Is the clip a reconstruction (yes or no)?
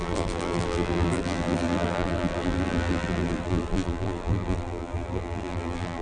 yes